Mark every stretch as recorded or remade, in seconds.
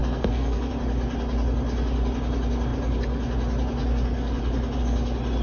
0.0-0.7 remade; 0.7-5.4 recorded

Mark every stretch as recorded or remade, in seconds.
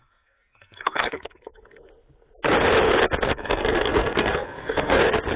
0.0-1.9 remade; 1.9-3.3 recorded; 3.3-5.0 remade; 5.0-5.4 recorded